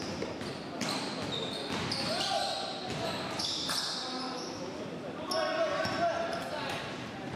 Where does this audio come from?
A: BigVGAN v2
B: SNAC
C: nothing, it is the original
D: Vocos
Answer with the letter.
C